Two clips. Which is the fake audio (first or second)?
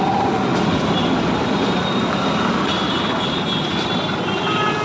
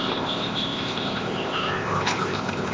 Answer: second